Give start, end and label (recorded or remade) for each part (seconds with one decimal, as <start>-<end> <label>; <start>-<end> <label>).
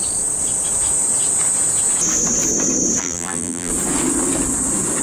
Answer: 0.0-3.0 recorded; 3.0-3.7 remade; 3.7-5.0 recorded